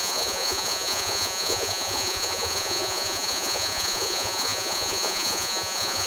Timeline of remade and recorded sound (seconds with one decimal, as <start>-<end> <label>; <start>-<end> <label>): 0.0-6.1 remade

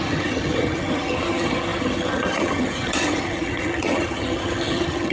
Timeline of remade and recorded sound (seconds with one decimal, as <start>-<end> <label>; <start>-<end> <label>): 0.0-5.1 remade

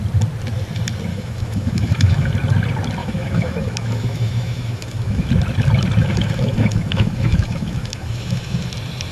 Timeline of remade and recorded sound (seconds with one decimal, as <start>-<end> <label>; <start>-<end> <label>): 0.0-1.1 recorded; 1.1-2.3 remade; 2.3-3.0 recorded; 3.0-5.3 remade; 5.3-6.0 recorded; 6.0-8.7 remade; 8.7-9.1 recorded

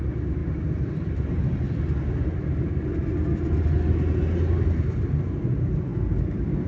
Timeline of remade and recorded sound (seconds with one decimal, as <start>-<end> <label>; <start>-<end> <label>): 0.0-6.7 recorded

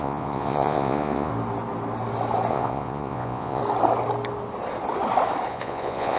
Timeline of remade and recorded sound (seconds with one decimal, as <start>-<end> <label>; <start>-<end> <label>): 0.0-1.3 remade; 1.3-2.5 recorded; 2.5-3.6 remade; 3.6-5.5 recorded; 5.5-6.2 remade

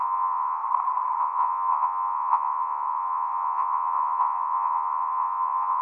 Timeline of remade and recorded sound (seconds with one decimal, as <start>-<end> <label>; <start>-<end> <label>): 0.0-0.6 remade; 0.6-1.2 recorded; 1.2-5.8 remade

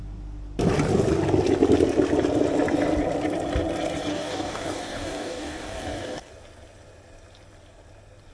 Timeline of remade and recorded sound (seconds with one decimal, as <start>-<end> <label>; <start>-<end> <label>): 0.0-4.1 recorded; 4.1-6.3 remade; 6.3-8.3 recorded